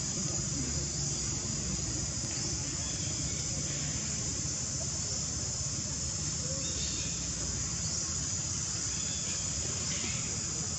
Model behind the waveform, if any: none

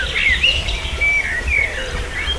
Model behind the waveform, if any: none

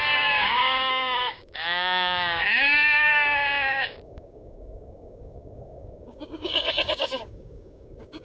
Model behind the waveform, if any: codec, DAC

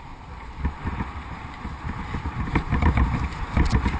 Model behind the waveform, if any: vocoder, BigVGAN v2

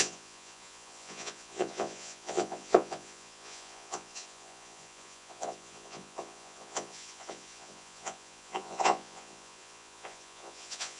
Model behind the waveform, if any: vocoder, Vocos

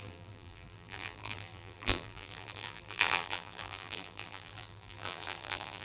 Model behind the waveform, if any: vocoder, BigVGAN v2